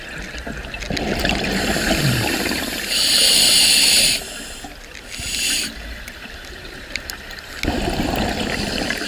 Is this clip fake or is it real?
real